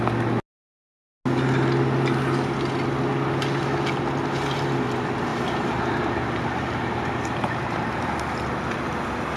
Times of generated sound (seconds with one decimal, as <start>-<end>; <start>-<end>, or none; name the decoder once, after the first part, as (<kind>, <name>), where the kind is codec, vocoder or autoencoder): 5.3-8.0 (vocoder, BigVGAN v2)